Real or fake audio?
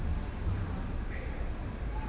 real